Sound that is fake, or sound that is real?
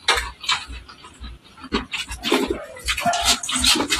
real